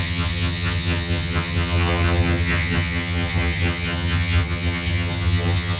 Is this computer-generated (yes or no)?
yes